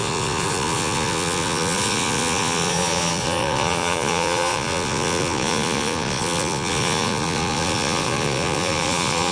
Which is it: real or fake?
fake